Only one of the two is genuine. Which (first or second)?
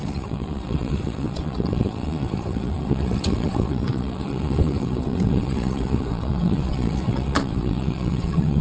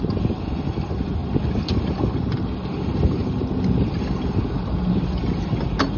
second